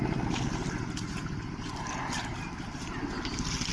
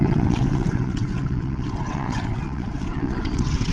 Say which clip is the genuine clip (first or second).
first